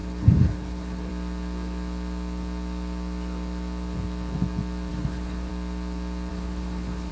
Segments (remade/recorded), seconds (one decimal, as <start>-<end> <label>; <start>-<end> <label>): 0.0-1.1 remade; 1.1-4.9 recorded; 4.9-5.5 remade; 5.5-6.3 recorded; 6.3-7.1 remade